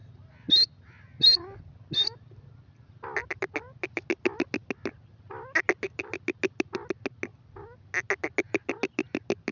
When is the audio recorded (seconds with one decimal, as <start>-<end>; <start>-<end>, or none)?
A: 0.0-9.5